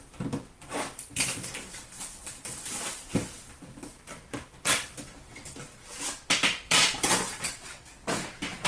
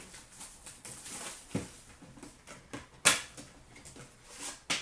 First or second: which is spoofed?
first